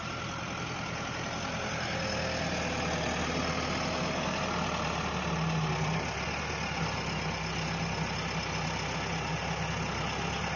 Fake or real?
real